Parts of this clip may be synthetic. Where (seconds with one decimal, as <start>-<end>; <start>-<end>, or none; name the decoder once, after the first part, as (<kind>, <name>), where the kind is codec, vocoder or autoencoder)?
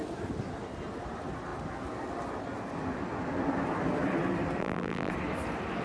4.6-5.1 (vocoder, BigVGAN v2)